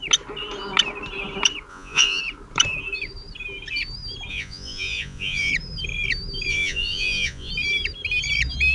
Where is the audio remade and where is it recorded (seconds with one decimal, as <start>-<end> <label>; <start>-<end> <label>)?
0.0-1.7 recorded; 1.7-2.2 remade; 2.2-4.3 recorded; 4.3-5.5 remade; 5.5-6.5 recorded; 6.5-7.5 remade; 7.5-8.7 recorded